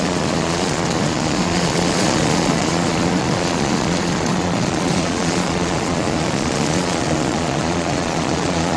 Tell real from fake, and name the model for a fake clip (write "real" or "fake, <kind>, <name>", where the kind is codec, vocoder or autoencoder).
fake, vocoder, Vocos